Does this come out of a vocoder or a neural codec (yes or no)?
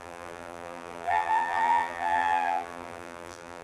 yes